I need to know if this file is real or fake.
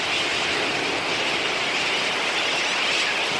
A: real